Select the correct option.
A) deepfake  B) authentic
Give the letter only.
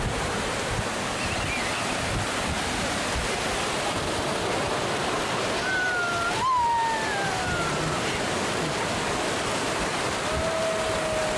B